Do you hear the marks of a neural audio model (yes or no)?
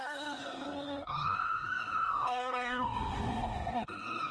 yes